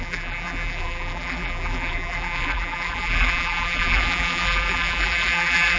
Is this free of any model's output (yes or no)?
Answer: no